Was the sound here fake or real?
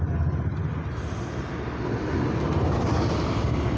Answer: real